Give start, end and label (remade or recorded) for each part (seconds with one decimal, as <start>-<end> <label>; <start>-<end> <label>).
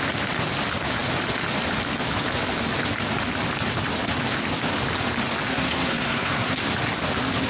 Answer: 0.0-5.5 recorded; 5.5-6.6 remade; 6.6-7.5 recorded